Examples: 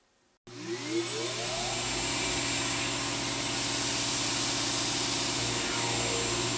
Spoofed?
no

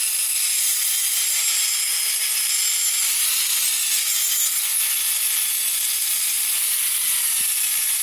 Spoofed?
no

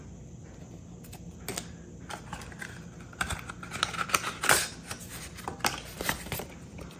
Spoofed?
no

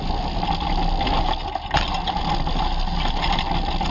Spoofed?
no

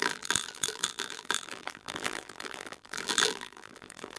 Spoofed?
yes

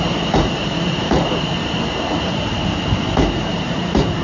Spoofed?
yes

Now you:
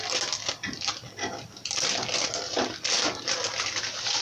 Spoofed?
no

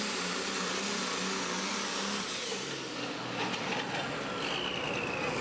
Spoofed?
no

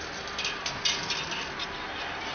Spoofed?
no